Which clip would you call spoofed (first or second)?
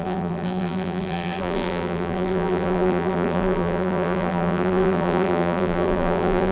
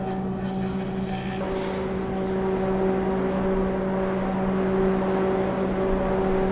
first